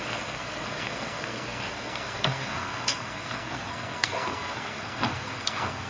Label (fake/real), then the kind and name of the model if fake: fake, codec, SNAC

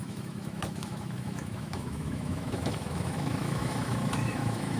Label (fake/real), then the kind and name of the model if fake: fake, autoencoder, DAC-VAE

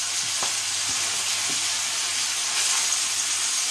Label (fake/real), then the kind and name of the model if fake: real